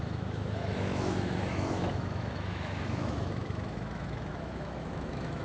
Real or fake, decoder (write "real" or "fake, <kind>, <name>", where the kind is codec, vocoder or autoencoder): fake, autoencoder, DAC-VAE